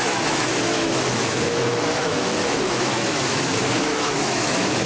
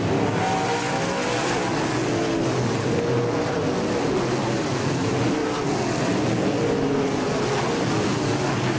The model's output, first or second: first